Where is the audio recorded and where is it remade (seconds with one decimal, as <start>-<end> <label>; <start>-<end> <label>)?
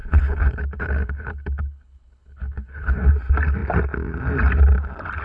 0.0-3.1 remade; 3.1-5.2 recorded